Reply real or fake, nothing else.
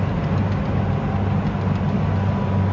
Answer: real